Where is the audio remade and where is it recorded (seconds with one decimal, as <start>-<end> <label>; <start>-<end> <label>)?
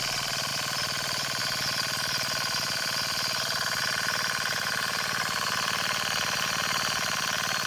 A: 0.0-0.5 recorded; 0.5-1.4 remade; 1.4-7.7 recorded